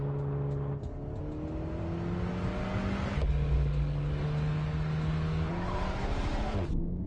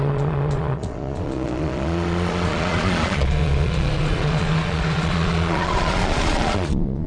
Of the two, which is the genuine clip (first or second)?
first